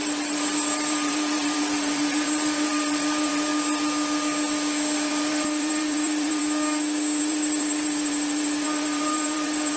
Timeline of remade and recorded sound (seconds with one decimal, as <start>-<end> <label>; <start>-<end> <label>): 0.0-3.5 remade; 3.5-5.1 recorded; 5.1-6.4 remade; 6.4-7.2 recorded; 7.2-9.8 remade